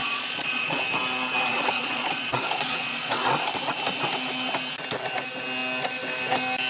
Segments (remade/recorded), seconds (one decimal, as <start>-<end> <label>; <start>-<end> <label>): 0.0-0.8 remade; 0.8-1.5 recorded; 1.5-3.4 remade; 3.4-6.7 recorded